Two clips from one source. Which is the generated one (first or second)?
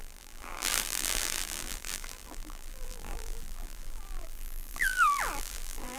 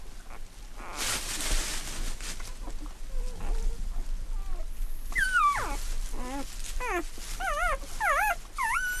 first